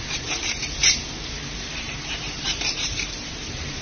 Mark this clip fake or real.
fake